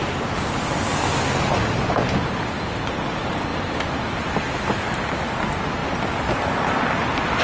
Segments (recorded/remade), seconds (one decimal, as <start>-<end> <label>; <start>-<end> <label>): 0.0-7.4 recorded